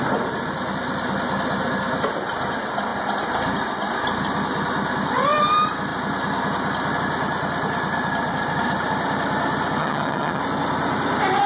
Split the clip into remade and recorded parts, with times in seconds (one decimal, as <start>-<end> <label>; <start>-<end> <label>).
0.0-9.8 recorded; 9.8-10.4 remade; 10.4-11.5 recorded